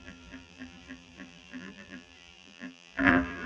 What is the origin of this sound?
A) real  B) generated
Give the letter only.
B